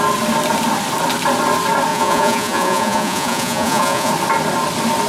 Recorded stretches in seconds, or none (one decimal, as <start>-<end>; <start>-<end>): 0.0-1.9; 4.1-5.1